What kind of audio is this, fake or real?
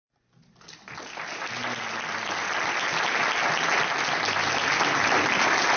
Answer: real